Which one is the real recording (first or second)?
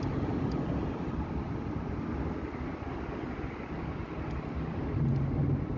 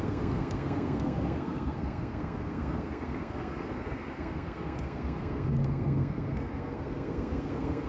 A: first